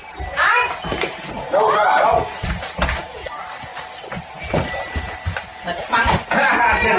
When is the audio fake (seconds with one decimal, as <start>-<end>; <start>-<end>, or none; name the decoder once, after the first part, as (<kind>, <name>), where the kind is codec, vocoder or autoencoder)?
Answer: none